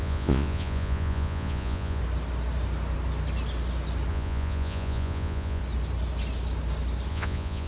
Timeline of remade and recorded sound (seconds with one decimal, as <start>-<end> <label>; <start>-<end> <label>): 0.0-2.0 remade; 2.0-4.1 recorded; 4.1-5.6 remade; 5.6-7.1 recorded; 7.1-7.7 remade